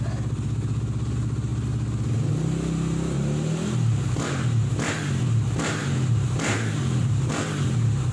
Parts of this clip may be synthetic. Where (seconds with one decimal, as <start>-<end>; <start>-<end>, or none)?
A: 5.8-7.3